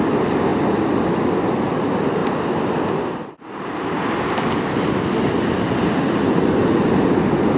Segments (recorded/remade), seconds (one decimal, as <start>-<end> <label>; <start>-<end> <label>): 0.0-0.5 recorded; 0.5-1.6 remade; 1.6-7.6 recorded

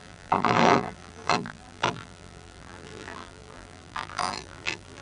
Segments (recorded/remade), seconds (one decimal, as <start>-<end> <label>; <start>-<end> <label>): 0.0-5.0 remade

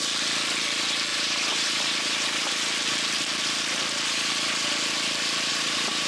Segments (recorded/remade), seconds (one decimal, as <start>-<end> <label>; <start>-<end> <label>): 0.0-1.1 recorded; 1.1-2.5 remade; 2.5-5.5 recorded; 5.5-6.1 remade

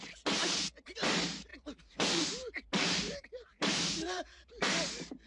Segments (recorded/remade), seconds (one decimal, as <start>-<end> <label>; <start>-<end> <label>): 0.0-0.4 recorded; 0.4-1.1 remade; 1.1-1.5 recorded; 1.5-4.7 remade; 4.7-5.3 recorded

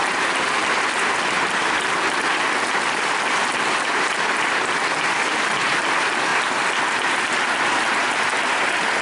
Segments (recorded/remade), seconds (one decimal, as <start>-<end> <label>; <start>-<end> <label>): 0.0-1.6 recorded; 1.6-3.8 remade; 3.8-6.3 recorded; 6.3-7.2 remade; 7.2-9.0 recorded